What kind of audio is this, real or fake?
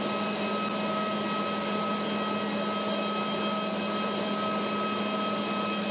real